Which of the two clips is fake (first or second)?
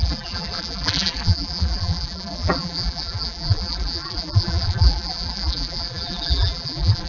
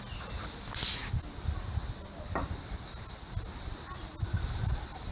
first